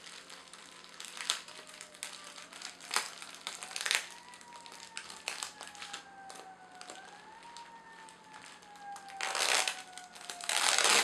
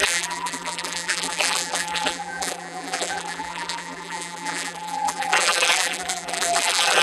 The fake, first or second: second